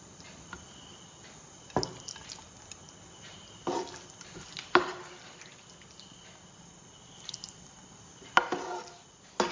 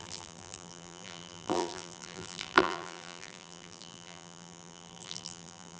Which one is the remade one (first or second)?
second